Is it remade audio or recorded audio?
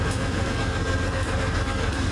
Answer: remade